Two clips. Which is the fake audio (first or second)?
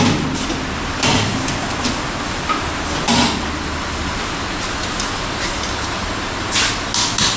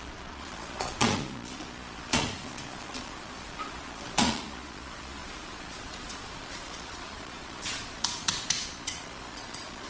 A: second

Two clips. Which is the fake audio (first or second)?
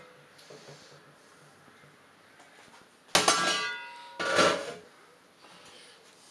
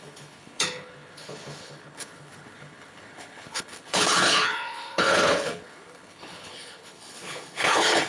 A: second